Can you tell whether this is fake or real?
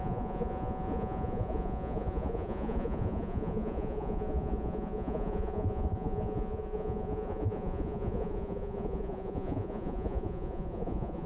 fake